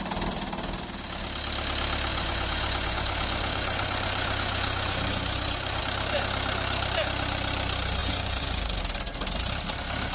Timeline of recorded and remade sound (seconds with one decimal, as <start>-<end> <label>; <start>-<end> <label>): 0.0-2.1 recorded; 2.1-5.8 remade; 5.8-8.0 recorded; 8.0-8.8 remade; 8.8-10.1 recorded